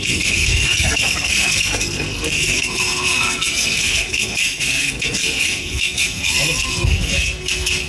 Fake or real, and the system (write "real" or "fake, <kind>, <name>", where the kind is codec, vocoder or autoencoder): fake, codec, SNAC